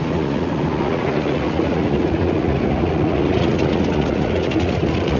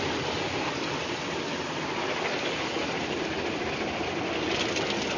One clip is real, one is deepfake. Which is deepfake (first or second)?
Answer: first